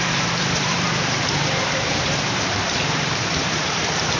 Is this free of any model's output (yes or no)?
no